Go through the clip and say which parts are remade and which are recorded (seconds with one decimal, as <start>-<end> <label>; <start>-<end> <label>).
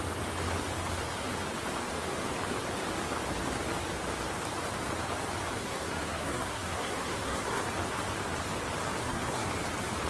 0.0-5.6 recorded; 5.6-7.6 remade; 7.6-9.0 recorded; 9.0-9.5 remade; 9.5-10.1 recorded